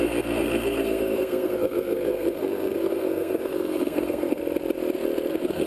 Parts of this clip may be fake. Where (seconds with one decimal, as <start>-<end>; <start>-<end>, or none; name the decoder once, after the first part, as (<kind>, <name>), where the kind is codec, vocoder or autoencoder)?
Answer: 0.0-4.4 (codec, SNAC); 5.3-5.7